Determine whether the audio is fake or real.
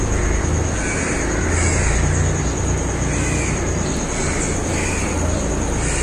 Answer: real